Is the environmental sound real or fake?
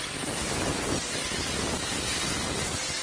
real